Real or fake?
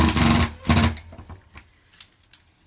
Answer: real